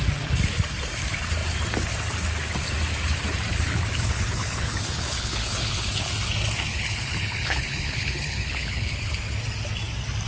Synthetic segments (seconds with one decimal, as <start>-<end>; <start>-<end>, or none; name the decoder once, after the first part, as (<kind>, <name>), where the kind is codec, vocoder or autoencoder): 3.5-6.1 (codec, HILCodec); 6.7-9.1